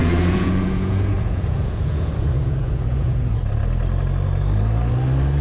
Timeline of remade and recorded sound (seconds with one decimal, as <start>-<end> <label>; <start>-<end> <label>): 0.0-3.2 remade; 3.2-5.4 recorded